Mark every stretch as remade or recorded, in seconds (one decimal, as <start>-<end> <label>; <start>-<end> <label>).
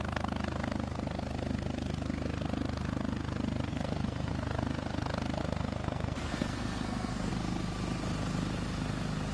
0.0-3.7 recorded; 3.7-4.3 remade; 4.3-5.4 recorded; 5.4-7.3 remade; 7.3-9.3 recorded